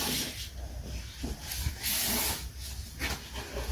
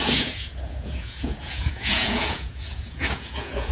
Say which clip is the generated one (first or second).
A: second